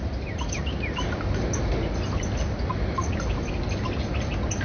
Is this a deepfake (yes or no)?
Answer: no